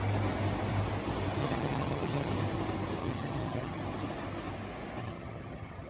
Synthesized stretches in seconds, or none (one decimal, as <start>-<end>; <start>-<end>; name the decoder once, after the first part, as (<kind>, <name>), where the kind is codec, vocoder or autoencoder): 1.4-2.3 (vocoder, HiFi-GAN); 3.0-3.8; 5.0-5.9